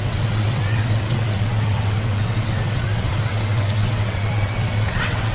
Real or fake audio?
fake